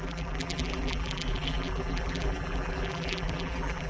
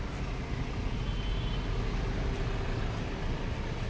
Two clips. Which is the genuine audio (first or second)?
second